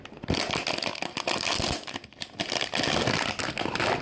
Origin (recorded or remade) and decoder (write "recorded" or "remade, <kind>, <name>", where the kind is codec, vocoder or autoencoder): recorded